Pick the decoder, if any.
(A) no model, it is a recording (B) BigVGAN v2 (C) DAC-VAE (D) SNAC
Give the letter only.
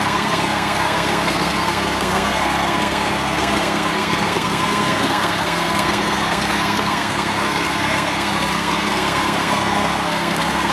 D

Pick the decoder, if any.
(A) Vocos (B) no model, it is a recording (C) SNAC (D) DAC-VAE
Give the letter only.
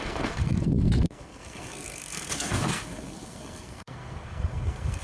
C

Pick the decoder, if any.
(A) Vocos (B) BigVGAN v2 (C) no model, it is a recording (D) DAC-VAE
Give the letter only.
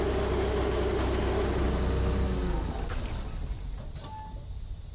C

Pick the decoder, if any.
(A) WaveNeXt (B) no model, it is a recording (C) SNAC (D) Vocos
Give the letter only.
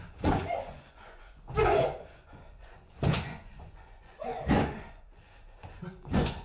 D